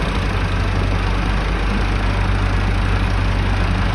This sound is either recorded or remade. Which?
recorded